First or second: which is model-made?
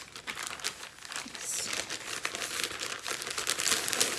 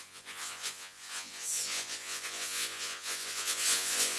second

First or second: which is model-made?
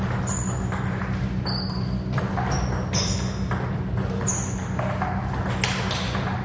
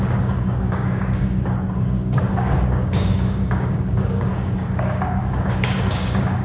second